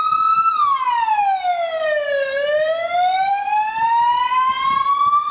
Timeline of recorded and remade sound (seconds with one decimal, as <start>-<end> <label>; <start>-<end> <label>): 0.0-5.3 recorded